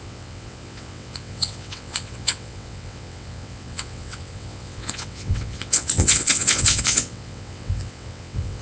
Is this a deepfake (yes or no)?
yes